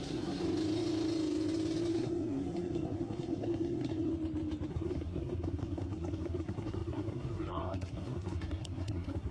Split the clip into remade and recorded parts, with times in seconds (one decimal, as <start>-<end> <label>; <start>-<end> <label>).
0.0-0.4 remade; 0.4-1.9 recorded; 1.9-4.1 remade; 4.1-4.7 recorded; 4.7-9.3 remade

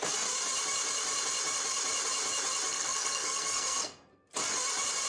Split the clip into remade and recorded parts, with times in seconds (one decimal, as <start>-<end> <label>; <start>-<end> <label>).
0.0-2.7 recorded; 2.7-4.3 remade; 4.3-5.1 recorded